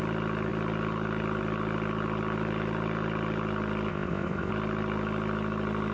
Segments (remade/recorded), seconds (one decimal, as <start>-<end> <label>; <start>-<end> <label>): 0.0-3.9 recorded; 3.9-4.5 remade; 4.5-5.9 recorded